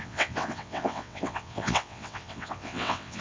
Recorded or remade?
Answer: remade